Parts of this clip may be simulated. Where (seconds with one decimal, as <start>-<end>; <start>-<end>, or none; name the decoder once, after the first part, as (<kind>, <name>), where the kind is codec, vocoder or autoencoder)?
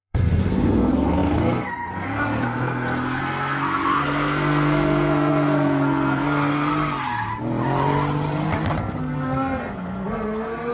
0.0-6.7 (codec, SNAC); 8.8-10.7